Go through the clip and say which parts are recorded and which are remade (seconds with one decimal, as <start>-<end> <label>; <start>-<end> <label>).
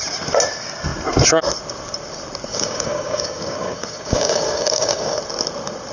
0.0-2.5 recorded; 2.5-5.2 remade; 5.2-5.9 recorded